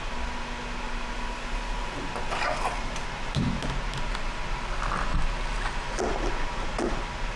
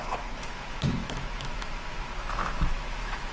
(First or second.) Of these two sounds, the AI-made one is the second